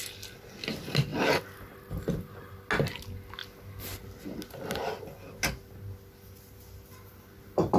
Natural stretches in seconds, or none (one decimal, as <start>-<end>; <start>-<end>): 0.0-7.8